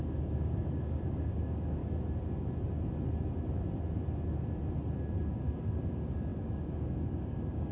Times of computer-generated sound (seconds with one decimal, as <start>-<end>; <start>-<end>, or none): 0.0-1.8; 5.2-7.7